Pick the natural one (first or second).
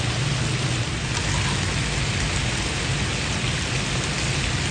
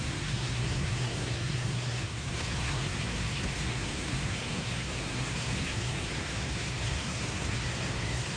first